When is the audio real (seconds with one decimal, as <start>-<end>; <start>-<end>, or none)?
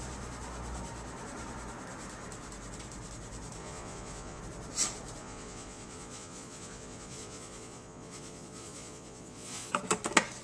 0.0-3.6; 4.4-5.2; 9.7-10.4